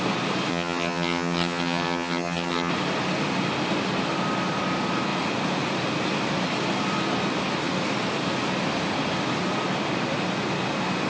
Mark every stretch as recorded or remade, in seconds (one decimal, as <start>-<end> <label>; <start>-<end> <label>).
0.0-0.5 recorded; 0.5-2.7 remade; 2.7-11.1 recorded